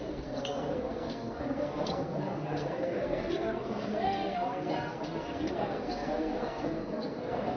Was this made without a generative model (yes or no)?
no